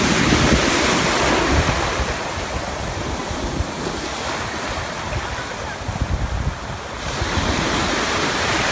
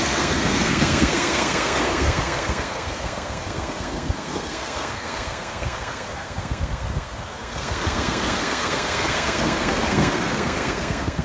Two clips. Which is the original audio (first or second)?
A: first